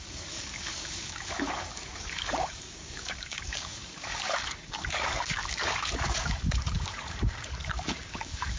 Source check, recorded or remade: remade